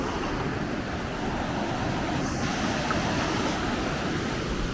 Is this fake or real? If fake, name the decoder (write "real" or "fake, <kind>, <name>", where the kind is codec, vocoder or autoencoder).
real